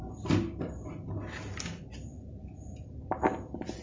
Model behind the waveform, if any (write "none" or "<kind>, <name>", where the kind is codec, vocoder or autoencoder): none